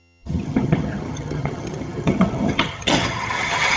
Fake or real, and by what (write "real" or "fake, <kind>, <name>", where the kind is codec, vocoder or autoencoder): fake, vocoder, HiFi-GAN